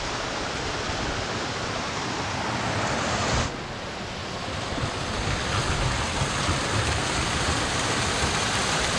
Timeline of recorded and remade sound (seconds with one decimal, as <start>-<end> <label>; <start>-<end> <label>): 0.0-9.0 recorded